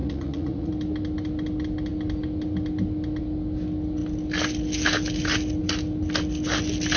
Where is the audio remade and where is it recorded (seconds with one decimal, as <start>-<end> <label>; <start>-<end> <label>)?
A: 0.0-0.7 remade; 0.7-7.0 recorded